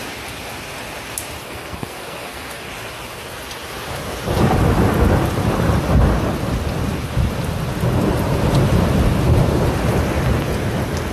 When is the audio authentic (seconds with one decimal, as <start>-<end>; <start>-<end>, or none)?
0.0-1.4; 2.7-11.1